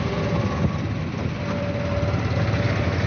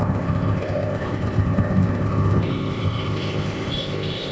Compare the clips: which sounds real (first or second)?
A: first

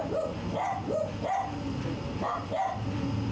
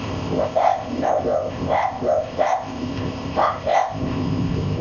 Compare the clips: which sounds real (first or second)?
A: first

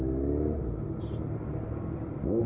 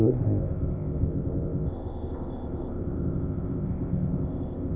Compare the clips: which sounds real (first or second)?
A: first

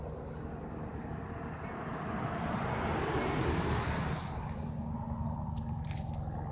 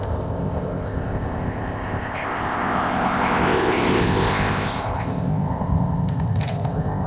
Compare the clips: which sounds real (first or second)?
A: first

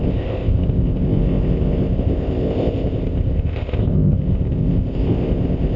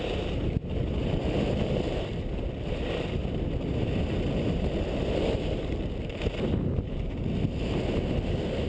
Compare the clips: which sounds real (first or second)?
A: second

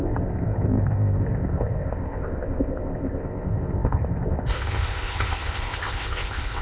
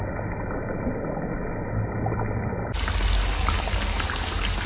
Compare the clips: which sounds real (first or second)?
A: second